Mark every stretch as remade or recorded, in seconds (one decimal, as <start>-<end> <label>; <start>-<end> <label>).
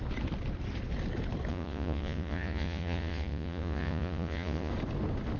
0.0-1.5 recorded; 1.5-4.7 remade; 4.7-5.4 recorded